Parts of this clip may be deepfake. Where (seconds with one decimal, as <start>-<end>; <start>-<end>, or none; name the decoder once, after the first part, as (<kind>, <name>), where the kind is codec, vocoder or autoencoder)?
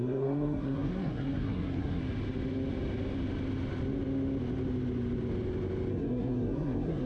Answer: 0.0-2.0 (codec, SNAC); 5.9-7.1